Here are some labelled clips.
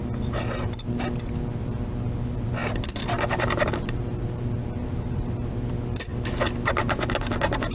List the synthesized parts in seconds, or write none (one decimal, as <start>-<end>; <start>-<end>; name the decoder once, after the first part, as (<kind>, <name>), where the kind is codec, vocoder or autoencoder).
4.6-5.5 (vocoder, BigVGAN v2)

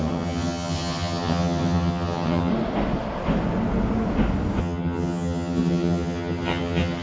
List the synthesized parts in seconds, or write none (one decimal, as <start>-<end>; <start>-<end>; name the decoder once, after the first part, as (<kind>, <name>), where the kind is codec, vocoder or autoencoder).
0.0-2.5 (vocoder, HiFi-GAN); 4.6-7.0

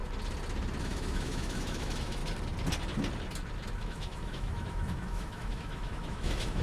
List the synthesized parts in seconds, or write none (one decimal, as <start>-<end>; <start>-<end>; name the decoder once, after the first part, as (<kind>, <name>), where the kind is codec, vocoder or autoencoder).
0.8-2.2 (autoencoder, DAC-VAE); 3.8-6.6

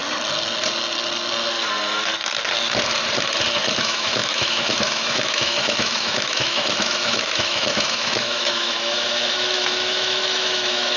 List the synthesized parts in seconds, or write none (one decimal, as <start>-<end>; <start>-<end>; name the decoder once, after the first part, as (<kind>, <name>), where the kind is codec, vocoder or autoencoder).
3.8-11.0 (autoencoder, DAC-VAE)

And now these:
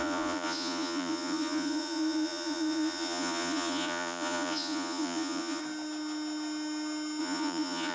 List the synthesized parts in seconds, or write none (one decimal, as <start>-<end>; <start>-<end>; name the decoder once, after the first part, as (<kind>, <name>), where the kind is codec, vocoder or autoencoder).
0.0-5.6 (vocoder, Vocos); 7.2-7.9

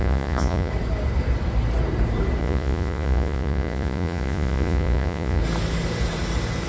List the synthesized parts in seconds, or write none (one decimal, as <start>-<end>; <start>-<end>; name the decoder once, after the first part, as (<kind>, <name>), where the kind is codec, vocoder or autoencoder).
0.0-0.7 (vocoder, Vocos); 2.4-5.4

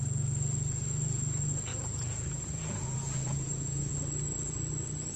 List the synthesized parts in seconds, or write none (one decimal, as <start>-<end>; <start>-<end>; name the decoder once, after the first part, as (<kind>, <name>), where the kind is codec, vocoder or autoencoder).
1.7-3.9 (vocoder, Vocos)

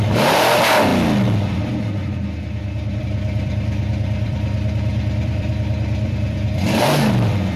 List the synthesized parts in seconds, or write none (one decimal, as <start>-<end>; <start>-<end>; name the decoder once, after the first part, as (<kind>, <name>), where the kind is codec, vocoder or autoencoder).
0.0-0.9 (vocoder, BigVGAN v2); 3.0-7.6